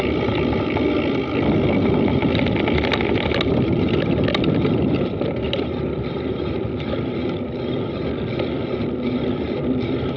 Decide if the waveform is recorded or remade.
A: recorded